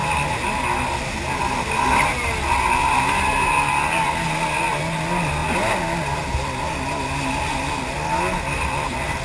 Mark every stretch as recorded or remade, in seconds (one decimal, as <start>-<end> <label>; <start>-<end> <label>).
0.0-9.2 recorded